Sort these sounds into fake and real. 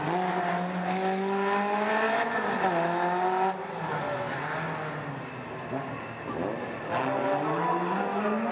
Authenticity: real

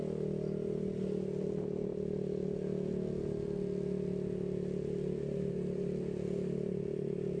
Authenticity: real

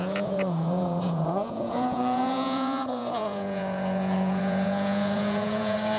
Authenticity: fake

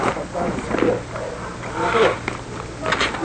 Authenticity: real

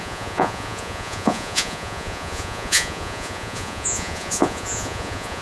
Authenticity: fake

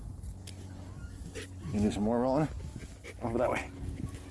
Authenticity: real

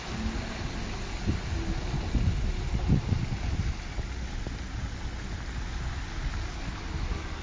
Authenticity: real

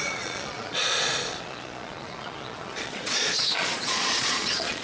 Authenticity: fake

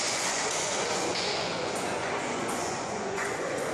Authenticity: fake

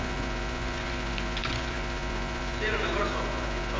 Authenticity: fake